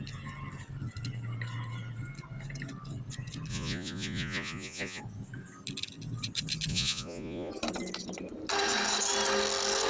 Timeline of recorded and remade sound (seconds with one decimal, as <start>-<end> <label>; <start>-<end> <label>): 0.0-3.5 recorded; 3.5-5.0 remade; 5.0-6.7 recorded; 6.7-7.5 remade; 7.5-9.9 recorded